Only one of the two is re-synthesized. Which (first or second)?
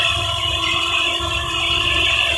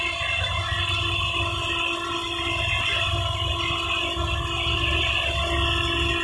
first